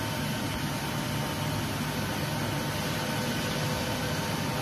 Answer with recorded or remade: recorded